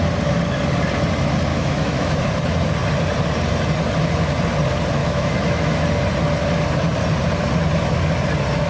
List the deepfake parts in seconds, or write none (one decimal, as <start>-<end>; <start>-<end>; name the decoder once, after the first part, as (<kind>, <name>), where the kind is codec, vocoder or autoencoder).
1.5-2.2 (autoencoder, DAC-VAE); 5.0-5.8